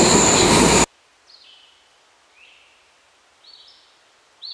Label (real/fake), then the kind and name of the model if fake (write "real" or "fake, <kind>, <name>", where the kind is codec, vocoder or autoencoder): real